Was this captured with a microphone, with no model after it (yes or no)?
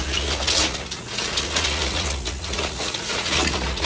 no